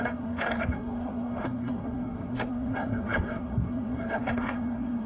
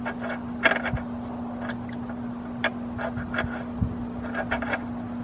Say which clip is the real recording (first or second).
second